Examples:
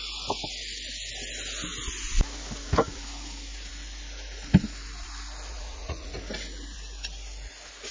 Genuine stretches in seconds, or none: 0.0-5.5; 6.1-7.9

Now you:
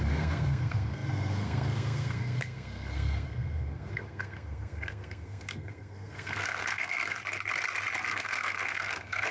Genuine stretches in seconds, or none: 7.2-8.0

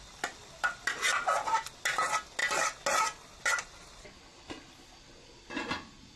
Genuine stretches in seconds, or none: 0.0-6.2

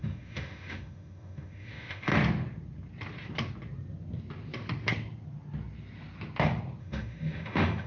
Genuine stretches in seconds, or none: 2.1-6.8

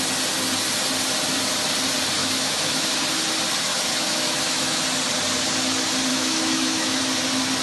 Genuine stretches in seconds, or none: 0.0-2.2; 2.9-3.7; 4.8-6.1; 7.0-7.6

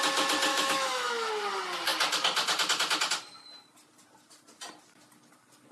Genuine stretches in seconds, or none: 0.0-0.5; 1.3-5.7